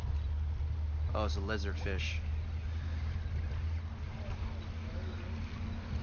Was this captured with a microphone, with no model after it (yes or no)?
yes